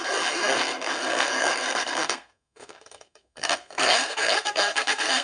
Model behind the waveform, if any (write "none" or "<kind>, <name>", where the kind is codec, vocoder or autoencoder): codec, SNAC